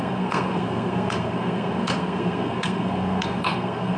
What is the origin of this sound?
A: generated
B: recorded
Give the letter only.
A